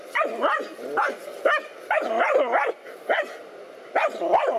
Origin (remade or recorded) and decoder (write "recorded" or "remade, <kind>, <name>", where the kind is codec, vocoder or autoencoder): recorded